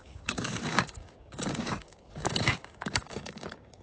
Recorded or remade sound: remade